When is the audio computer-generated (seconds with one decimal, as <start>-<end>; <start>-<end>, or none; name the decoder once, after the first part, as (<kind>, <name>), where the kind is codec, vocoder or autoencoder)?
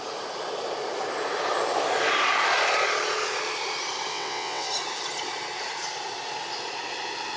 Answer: 4.1-4.7 (vocoder, WaveNeXt)